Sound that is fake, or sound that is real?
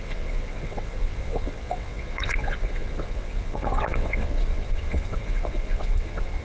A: fake